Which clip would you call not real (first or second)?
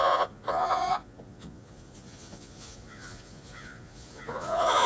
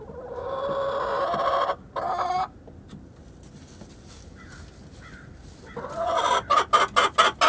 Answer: first